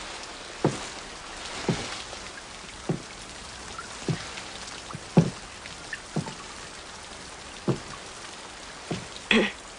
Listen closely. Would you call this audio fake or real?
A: real